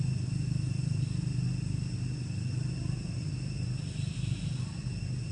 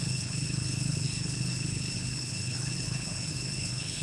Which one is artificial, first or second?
second